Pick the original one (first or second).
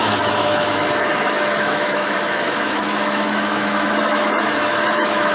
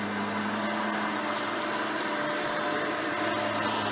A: second